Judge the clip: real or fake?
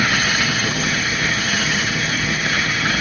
fake